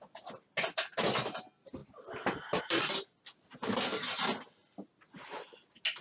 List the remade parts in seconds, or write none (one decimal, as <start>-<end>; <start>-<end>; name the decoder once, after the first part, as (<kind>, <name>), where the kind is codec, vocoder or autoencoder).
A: none